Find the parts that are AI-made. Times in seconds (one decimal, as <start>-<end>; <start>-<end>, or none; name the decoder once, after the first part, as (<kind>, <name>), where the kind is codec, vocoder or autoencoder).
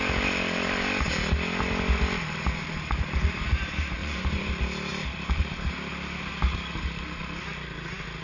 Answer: 4.0-4.5 (vocoder, Vocos)